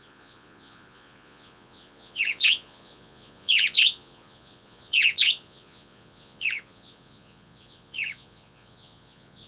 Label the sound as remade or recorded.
remade